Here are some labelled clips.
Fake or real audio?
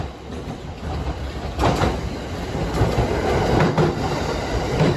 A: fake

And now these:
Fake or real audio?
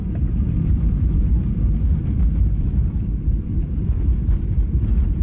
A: fake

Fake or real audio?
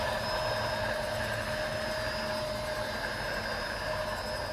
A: real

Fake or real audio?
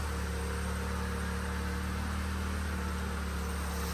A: real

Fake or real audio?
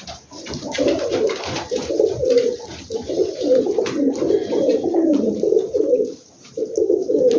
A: fake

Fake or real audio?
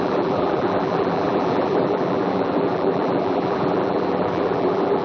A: fake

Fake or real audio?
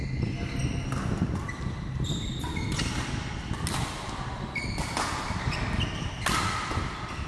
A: real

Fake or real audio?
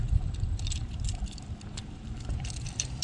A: fake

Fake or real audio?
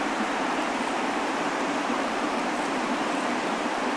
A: fake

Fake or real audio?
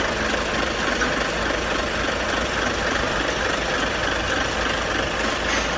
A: fake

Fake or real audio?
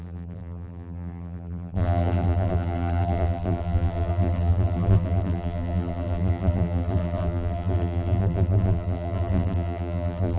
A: fake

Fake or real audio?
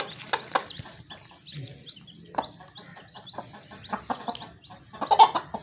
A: real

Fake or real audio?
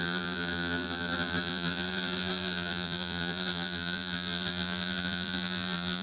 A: fake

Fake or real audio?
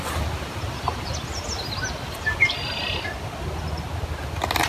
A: real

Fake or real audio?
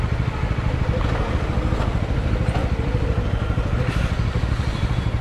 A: fake